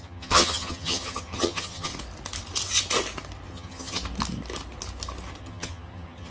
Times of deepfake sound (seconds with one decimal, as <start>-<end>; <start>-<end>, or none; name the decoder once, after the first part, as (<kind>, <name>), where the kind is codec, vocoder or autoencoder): 0.0-1.9 (vocoder, HiFi-GAN); 3.5-4.0; 5.4-6.3